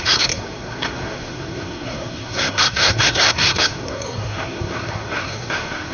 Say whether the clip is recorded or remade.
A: remade